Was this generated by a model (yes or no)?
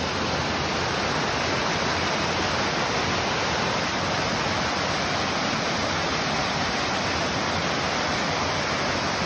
no